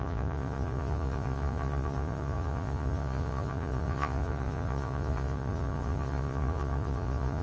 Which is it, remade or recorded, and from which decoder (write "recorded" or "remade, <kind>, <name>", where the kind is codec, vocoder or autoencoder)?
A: remade, vocoder, Vocos